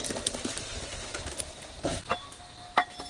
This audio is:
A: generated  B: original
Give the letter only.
B